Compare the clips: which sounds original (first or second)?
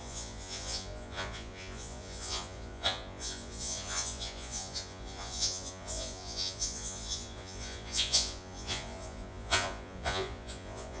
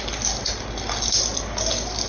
second